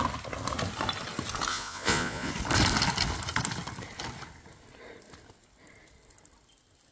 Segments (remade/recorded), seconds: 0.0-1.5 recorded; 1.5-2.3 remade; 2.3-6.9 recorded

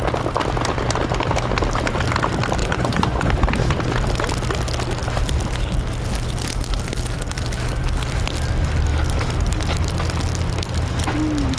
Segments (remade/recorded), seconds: 0.0-2.6 recorded; 2.6-3.3 remade; 3.3-11.6 recorded

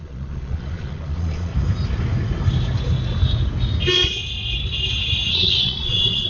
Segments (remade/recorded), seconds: 0.0-1.5 remade; 1.5-5.3 recorded; 5.3-6.3 remade

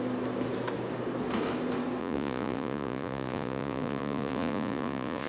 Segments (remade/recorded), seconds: 0.0-2.0 recorded; 2.0-5.3 remade

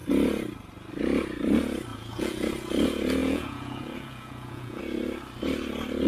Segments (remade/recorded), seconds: 0.0-1.9 recorded; 1.9-2.5 remade; 2.5-3.2 recorded; 3.2-4.8 remade; 4.8-6.1 recorded

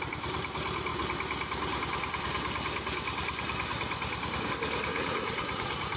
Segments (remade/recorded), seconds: 0.0-4.9 recorded; 4.9-6.0 remade

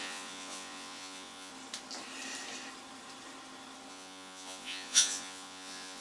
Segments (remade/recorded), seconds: 0.0-1.5 remade; 1.5-3.9 recorded; 3.9-6.0 remade